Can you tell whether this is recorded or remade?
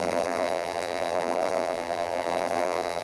remade